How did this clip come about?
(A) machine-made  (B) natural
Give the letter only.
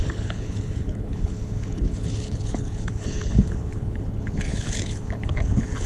A